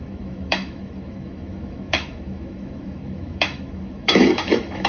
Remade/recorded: remade